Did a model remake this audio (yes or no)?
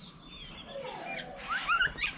yes